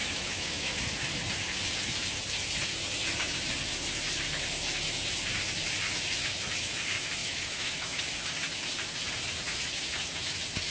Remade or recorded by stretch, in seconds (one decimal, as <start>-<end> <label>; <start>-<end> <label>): 0.0-0.8 remade; 0.8-7.2 recorded; 7.2-8.0 remade; 8.0-10.7 recorded